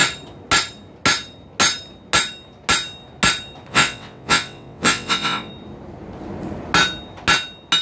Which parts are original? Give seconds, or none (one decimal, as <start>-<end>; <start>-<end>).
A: 0.0-3.7; 5.5-7.8